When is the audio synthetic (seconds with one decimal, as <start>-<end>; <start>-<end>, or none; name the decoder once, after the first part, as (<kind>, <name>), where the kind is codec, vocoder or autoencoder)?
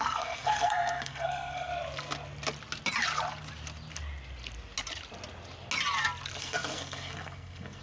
0.0-1.7 (codec, SNAC); 6.4-7.8